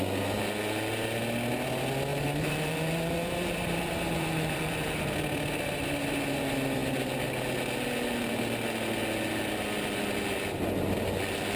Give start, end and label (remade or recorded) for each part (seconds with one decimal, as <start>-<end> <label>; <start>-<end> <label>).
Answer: 0.0-2.1 recorded; 2.1-5.1 remade; 5.1-11.6 recorded